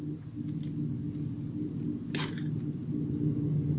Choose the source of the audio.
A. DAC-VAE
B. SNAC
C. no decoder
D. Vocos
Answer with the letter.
C